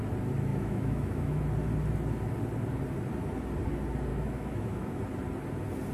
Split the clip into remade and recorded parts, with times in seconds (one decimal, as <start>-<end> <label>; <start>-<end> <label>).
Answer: 0.0-0.5 recorded; 0.5-1.4 remade; 1.4-4.1 recorded; 4.1-5.0 remade; 5.0-5.9 recorded